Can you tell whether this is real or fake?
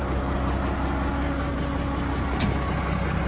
real